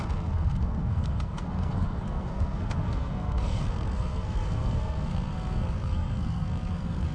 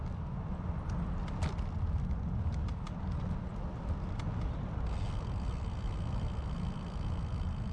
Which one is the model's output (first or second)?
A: first